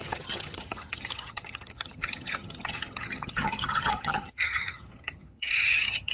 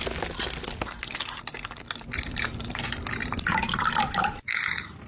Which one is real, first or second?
second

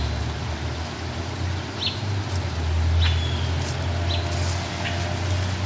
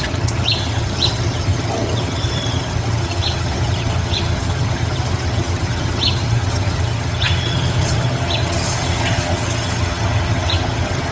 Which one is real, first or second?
first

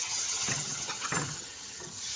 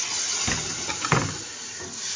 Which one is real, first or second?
second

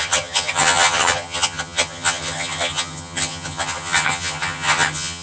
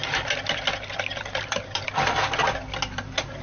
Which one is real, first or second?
second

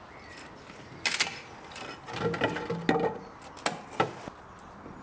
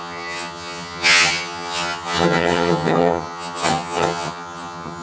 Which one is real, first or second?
first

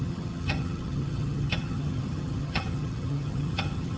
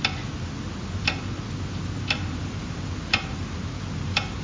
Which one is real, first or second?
second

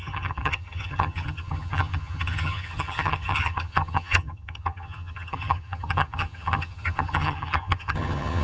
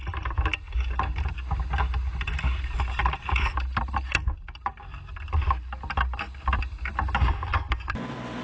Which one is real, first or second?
second